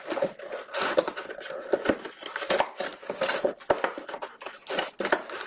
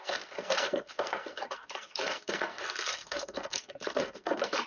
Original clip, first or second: first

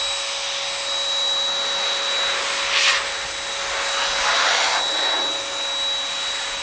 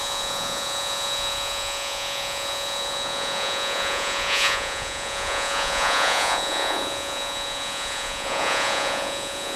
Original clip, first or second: first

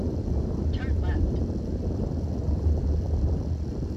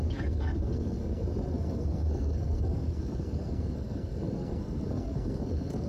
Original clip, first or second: first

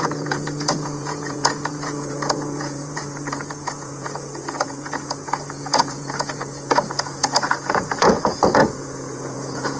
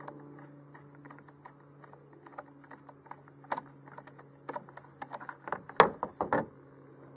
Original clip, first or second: second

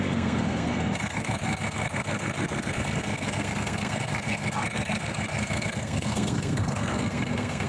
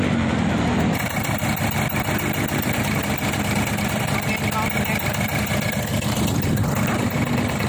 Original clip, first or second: second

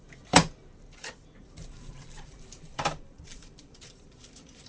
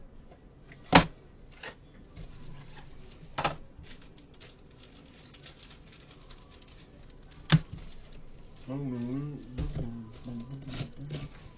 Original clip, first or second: second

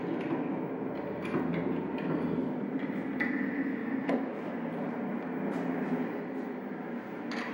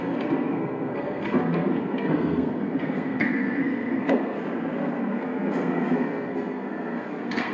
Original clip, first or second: first